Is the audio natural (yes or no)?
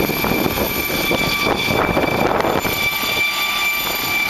yes